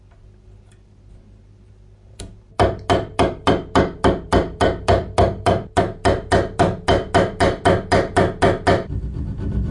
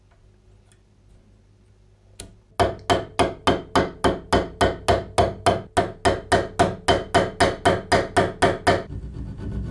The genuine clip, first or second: second